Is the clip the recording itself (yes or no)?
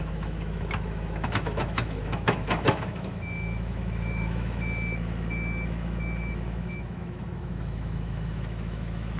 no